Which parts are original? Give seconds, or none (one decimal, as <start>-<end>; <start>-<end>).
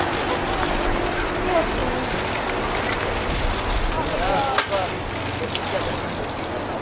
0.0-6.8